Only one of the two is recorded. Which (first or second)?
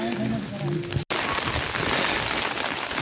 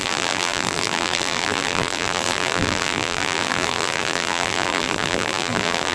first